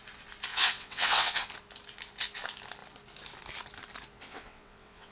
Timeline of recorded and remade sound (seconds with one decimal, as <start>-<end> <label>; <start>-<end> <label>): 0.0-0.5 recorded; 0.5-1.5 remade; 1.5-4.2 recorded; 4.2-5.1 remade